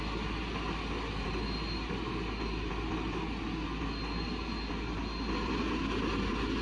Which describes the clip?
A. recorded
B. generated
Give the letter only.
A